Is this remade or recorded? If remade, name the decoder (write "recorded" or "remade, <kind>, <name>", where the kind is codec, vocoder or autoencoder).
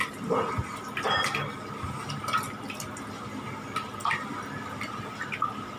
recorded